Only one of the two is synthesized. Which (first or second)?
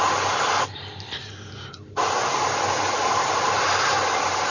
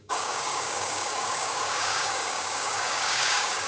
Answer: second